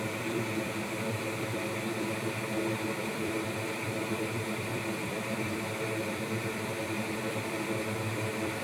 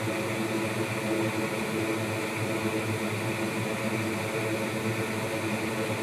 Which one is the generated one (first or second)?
first